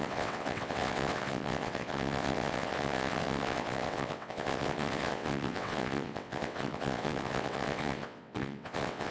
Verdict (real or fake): fake